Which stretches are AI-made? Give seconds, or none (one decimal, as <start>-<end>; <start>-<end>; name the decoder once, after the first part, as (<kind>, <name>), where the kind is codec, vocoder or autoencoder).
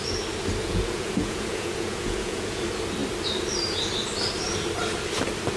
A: 0.6-2.6 (vocoder, Vocos)